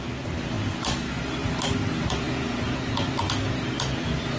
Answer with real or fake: real